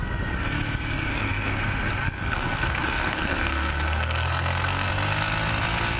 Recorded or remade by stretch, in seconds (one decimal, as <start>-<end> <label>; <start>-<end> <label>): 0.0-1.1 recorded; 1.1-1.6 remade; 1.6-2.0 recorded; 2.0-4.9 remade; 4.9-6.0 recorded